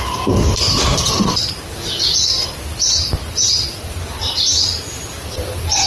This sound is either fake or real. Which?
fake